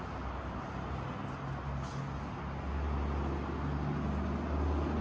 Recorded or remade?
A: recorded